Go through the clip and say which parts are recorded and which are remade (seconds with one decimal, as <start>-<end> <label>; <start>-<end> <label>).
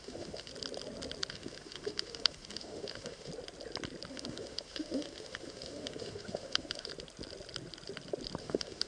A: 0.0-0.5 remade; 0.5-1.3 recorded; 1.3-3.3 remade; 3.3-4.1 recorded; 4.1-6.9 remade; 6.9-8.4 recorded; 8.4-8.9 remade